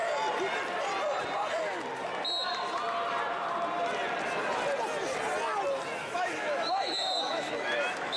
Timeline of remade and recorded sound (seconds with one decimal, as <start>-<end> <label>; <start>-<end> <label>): 0.0-6.0 recorded; 6.0-8.2 remade